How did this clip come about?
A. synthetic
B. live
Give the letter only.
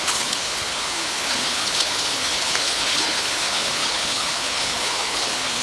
A